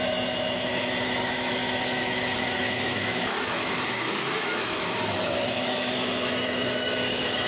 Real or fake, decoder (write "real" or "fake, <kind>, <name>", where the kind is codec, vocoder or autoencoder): fake, autoencoder, DAC-VAE